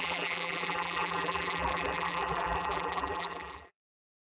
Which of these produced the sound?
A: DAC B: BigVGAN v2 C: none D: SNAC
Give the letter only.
B